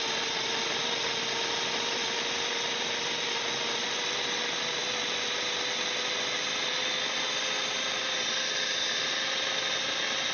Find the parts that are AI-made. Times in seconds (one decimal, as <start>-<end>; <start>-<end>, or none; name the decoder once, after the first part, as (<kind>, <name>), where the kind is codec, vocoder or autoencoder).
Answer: none